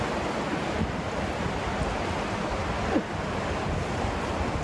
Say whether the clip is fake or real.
real